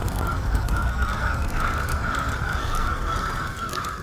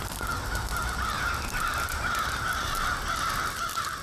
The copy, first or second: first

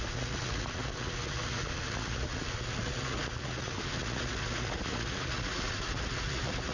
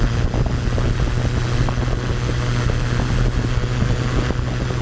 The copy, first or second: first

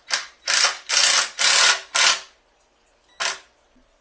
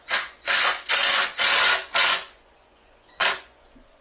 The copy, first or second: second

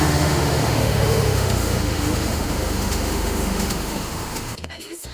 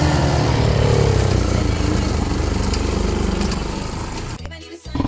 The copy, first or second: first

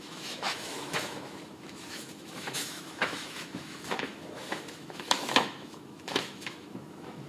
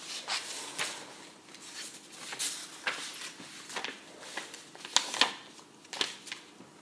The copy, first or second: first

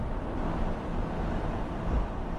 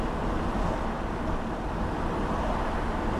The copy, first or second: first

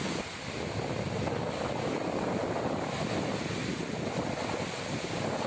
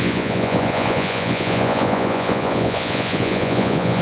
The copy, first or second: second